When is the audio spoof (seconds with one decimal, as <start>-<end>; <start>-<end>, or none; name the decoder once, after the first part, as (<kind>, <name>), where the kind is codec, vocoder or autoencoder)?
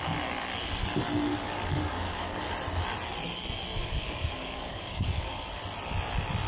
1.3-2.4 (codec, DAC); 3.8-5.6